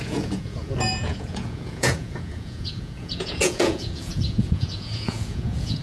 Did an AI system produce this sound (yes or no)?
yes